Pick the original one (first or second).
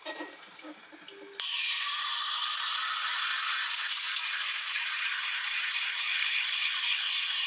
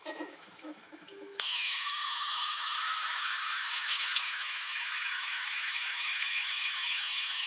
first